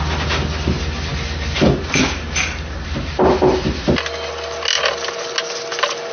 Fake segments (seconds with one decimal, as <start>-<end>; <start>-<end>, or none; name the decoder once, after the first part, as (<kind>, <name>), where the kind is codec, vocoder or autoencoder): none